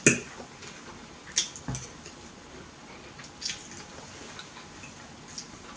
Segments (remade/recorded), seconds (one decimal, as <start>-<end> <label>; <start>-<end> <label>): 0.0-5.8 recorded